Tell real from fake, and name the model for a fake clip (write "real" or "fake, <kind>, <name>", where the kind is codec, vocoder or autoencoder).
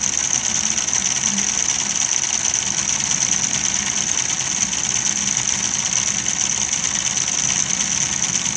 real